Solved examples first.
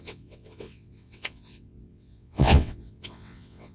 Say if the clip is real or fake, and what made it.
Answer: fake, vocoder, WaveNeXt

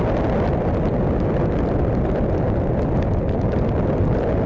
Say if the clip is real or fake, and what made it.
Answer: real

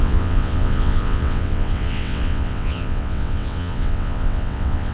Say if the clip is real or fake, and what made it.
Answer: fake, vocoder, WaveNeXt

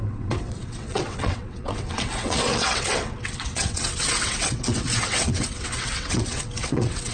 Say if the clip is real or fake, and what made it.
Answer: fake, vocoder, WaveNeXt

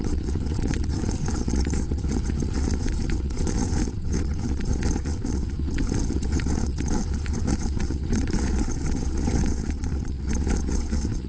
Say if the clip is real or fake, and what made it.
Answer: fake, vocoder, WaveNeXt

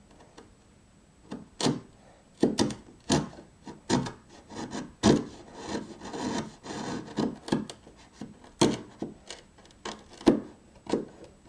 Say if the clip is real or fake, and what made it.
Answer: real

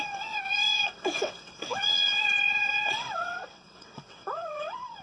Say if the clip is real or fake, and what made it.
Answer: fake, vocoder, WaveNeXt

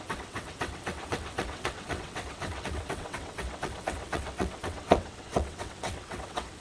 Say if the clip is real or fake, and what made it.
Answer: fake, vocoder, WaveNeXt